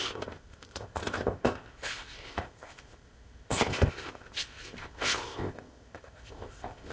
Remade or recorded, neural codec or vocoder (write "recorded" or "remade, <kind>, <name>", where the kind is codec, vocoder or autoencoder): remade, codec, ZipCodec